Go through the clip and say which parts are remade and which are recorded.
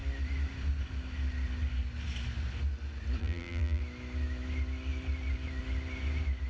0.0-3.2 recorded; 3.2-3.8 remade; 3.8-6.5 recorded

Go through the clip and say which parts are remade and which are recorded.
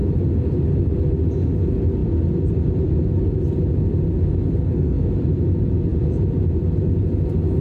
0.0-4.6 recorded; 4.6-5.1 remade; 5.1-7.6 recorded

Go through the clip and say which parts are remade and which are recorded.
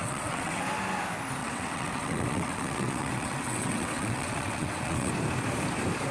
0.0-0.6 remade; 0.6-1.4 recorded; 1.4-5.1 remade; 5.1-6.1 recorded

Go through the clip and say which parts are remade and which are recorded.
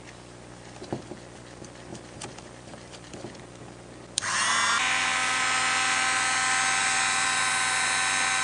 0.0-1.9 recorded; 1.9-3.1 remade; 3.1-6.8 recorded; 6.8-7.4 remade; 7.4-8.4 recorded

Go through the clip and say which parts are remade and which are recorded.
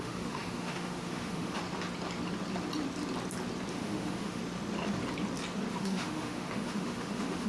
0.0-1.6 remade; 1.6-3.7 recorded; 3.7-4.4 remade; 4.4-5.7 recorded; 5.7-7.5 remade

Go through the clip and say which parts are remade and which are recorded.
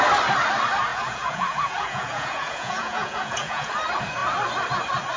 0.0-0.9 recorded; 0.9-3.7 remade; 3.7-5.2 recorded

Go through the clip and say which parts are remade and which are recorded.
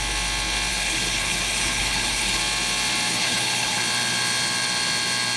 0.0-0.7 recorded; 0.7-2.4 remade; 2.4-3.1 recorded; 3.1-3.8 remade; 3.8-5.4 recorded